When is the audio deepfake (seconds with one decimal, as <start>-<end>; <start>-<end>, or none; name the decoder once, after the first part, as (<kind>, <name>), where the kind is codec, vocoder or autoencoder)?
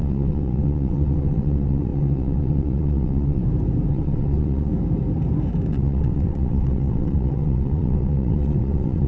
0.0-3.4 (vocoder, WaveNeXt); 3.9-4.7; 5.7-9.1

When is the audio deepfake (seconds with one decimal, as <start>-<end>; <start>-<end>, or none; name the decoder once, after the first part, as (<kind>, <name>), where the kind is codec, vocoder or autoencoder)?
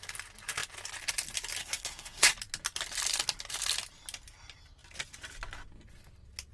1.6-2.3 (codec, SNAC)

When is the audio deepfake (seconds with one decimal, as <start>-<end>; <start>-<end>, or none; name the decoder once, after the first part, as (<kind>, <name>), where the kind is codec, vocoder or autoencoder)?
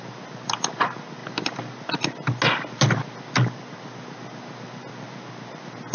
none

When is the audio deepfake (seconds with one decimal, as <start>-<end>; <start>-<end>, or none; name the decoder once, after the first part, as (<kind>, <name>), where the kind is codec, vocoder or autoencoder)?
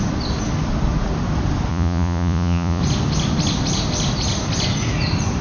1.7-2.8 (vocoder, Vocos)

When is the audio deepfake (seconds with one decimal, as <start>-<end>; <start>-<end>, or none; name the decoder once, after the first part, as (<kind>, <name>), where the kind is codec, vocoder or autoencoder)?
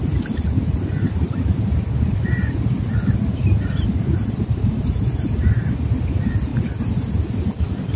none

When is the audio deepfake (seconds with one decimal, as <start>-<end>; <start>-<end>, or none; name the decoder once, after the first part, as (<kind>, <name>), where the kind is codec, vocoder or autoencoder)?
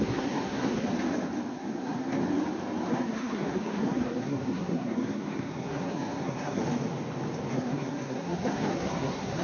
0.0-0.9 (codec, SNAC); 1.5-2.2; 2.9-6.6; 7.5-9.4